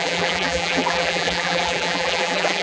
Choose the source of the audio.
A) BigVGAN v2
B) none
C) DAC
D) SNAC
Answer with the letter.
A